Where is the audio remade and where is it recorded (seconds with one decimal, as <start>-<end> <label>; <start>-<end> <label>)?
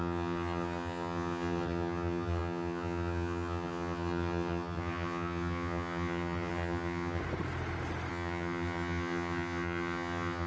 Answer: 0.0-7.2 remade; 7.2-8.1 recorded; 8.1-10.5 remade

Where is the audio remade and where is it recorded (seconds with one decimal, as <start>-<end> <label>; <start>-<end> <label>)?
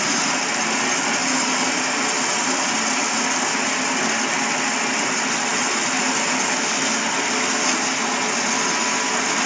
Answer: 0.0-9.5 recorded